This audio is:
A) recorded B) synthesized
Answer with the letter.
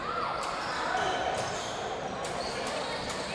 A